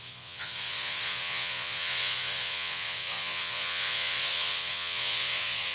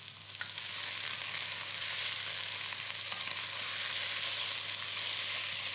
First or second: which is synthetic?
first